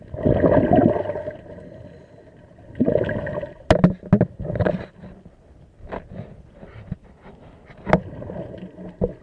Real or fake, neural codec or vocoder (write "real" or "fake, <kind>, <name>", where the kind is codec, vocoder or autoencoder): real